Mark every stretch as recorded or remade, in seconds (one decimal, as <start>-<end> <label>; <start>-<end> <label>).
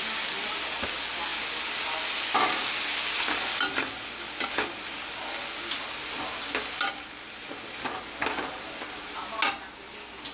0.0-10.3 recorded